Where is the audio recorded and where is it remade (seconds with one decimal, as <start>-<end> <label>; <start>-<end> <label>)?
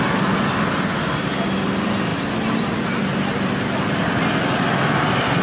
0.0-5.4 recorded